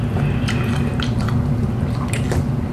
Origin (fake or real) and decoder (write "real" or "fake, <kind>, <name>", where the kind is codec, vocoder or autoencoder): real